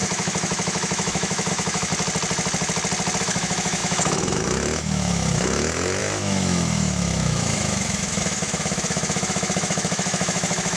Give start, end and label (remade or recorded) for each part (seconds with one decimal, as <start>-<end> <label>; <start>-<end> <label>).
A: 0.0-1.9 remade; 1.9-3.2 recorded; 3.2-10.8 remade